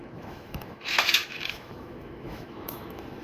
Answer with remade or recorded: remade